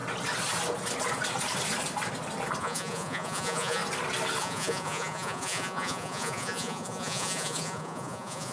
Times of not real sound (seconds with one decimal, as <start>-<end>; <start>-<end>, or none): 2.6-3.8; 4.4-8.5